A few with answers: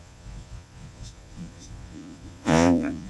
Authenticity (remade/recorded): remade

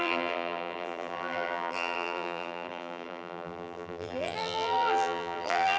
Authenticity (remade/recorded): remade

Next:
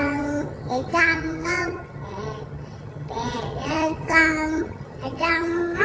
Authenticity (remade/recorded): remade